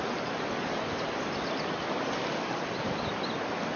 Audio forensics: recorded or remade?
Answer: recorded